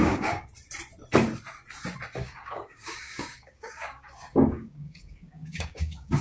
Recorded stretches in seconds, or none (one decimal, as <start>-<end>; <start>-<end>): 0.5-2.2